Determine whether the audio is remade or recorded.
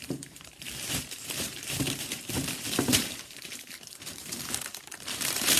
remade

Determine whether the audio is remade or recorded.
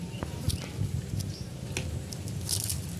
recorded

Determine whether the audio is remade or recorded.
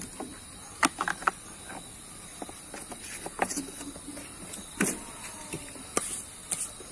recorded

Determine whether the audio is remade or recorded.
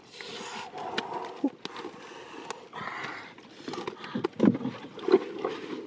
recorded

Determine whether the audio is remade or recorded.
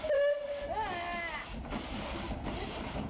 recorded